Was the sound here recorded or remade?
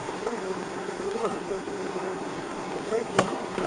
remade